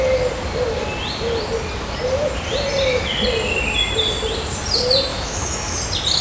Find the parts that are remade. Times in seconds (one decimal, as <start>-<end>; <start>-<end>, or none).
5.1-5.8